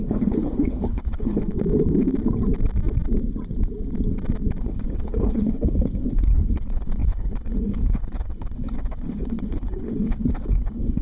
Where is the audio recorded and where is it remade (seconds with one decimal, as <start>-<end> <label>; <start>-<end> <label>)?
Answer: 0.0-1.4 remade; 1.4-4.6 recorded; 4.6-11.0 remade